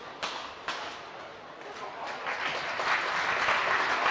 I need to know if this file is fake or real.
real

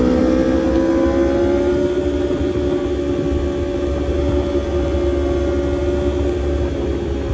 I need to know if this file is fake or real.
real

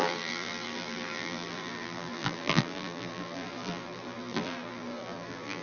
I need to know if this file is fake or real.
fake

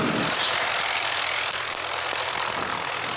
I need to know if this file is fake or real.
real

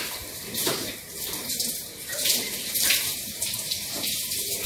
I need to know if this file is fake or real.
fake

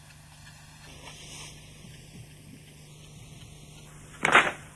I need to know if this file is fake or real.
real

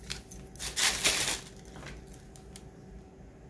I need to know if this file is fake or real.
real